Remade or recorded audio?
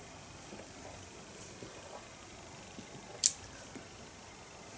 recorded